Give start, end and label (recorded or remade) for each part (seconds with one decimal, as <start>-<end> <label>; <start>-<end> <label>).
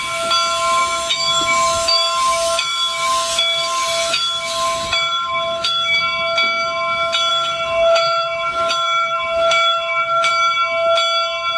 0.0-0.8 recorded; 0.8-6.0 remade; 6.0-7.3 recorded; 7.3-10.3 remade; 10.3-11.6 recorded